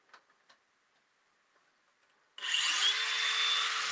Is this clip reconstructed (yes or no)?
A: no